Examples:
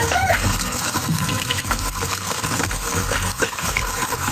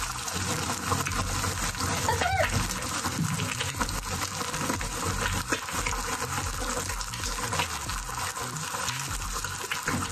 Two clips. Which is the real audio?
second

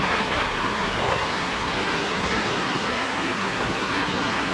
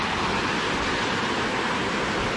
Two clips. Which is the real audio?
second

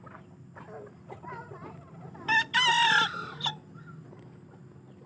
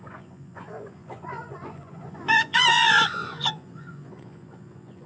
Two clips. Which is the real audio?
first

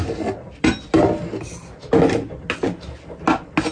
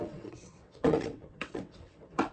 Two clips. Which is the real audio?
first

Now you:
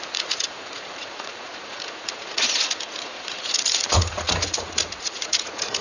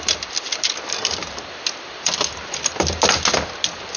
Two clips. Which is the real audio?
second